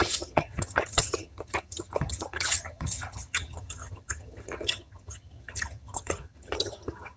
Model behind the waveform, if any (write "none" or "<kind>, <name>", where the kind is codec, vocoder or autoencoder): vocoder, HiFi-GAN